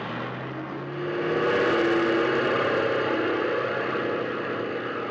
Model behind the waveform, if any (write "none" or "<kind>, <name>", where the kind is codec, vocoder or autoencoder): none